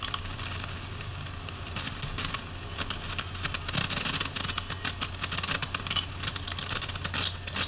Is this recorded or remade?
recorded